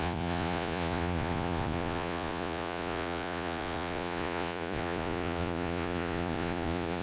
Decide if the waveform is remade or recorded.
remade